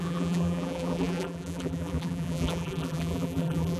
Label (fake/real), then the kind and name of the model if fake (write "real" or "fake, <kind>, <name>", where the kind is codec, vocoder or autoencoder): fake, vocoder, BigVGAN v2